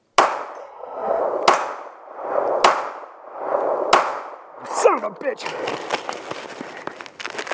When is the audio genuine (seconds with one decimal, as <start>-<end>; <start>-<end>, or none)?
0.0-0.6; 1.2-7.5